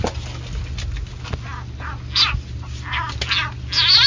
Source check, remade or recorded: recorded